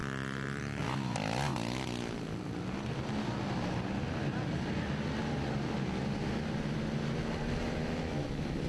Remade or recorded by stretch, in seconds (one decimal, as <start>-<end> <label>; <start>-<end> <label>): 0.0-8.7 recorded